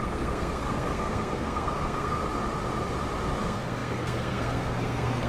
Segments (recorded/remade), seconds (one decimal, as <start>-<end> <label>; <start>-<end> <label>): 0.0-2.2 remade; 2.2-3.4 recorded; 3.4-5.3 remade